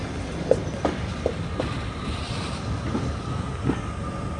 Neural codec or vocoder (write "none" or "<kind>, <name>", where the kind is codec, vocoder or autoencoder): none